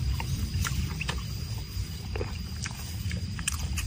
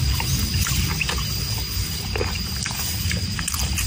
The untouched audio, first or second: second